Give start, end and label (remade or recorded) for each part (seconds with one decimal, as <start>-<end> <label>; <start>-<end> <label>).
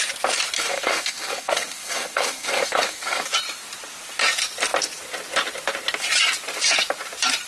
0.0-0.6 recorded; 0.6-3.2 remade; 3.2-7.5 recorded